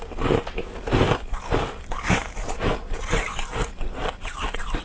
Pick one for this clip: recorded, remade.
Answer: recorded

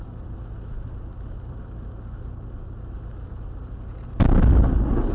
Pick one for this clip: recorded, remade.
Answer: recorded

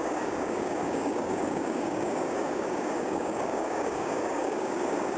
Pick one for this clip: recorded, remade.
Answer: remade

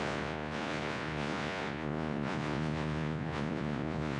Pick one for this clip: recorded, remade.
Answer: remade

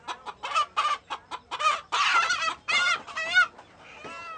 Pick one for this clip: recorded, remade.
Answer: recorded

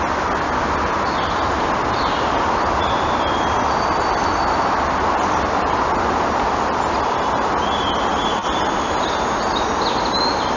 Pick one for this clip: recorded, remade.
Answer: recorded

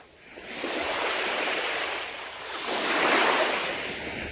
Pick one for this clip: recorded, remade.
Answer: recorded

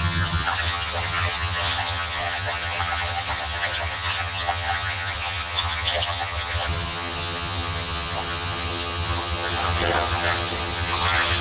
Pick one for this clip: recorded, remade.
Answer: remade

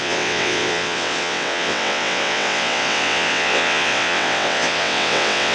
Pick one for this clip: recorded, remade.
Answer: remade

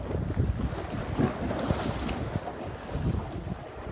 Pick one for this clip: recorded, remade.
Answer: recorded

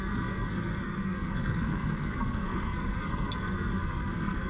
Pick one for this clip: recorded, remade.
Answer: remade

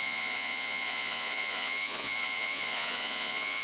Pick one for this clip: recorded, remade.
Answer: remade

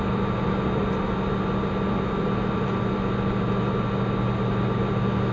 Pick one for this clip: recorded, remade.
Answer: recorded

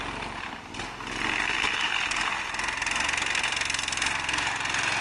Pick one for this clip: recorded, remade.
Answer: recorded